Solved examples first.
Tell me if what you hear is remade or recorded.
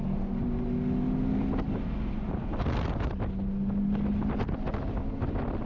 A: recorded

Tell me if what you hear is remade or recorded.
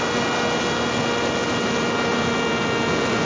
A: recorded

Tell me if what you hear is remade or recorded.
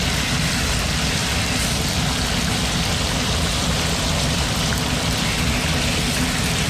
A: recorded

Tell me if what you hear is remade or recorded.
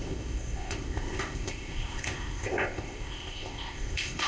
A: remade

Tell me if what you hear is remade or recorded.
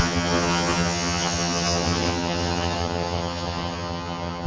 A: remade